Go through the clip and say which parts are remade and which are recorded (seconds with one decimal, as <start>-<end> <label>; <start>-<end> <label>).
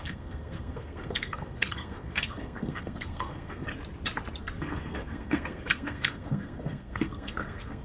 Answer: 0.0-3.7 remade; 3.7-4.4 recorded; 4.4-7.8 remade